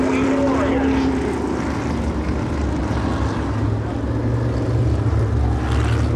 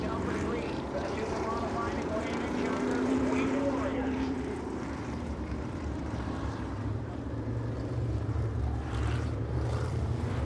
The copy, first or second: second